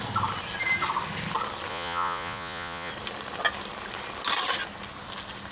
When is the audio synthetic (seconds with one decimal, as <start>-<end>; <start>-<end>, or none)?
1.7-2.9